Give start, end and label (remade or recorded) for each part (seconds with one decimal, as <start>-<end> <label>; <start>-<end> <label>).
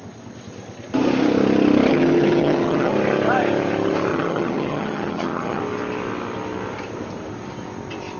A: 0.0-1.9 recorded; 1.9-2.9 remade; 2.9-4.1 recorded; 4.1-5.6 remade; 5.6-8.2 recorded